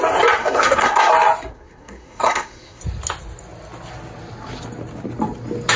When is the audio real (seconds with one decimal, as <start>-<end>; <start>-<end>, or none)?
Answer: 0.0-0.4; 1.1-1.5; 2.8-5.8